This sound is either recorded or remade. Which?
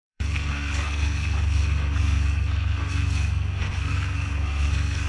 remade